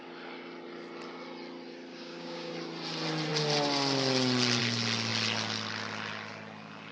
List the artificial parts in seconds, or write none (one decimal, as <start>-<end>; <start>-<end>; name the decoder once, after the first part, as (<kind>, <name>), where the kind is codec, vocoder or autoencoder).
1.9-2.5 (codec, DAC)